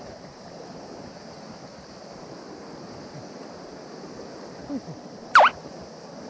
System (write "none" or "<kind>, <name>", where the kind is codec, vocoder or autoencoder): none